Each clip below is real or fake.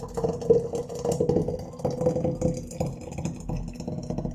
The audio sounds real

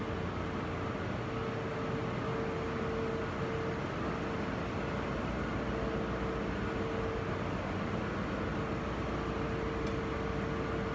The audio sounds real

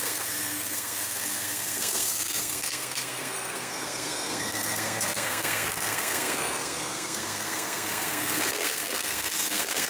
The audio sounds fake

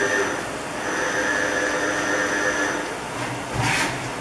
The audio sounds real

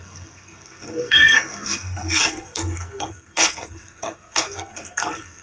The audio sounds fake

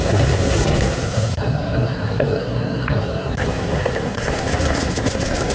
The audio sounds fake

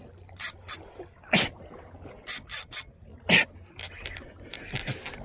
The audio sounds real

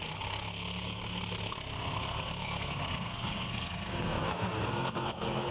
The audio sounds fake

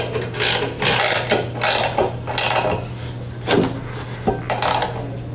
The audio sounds real